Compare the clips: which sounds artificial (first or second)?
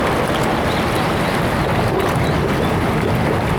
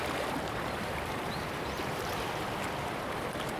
second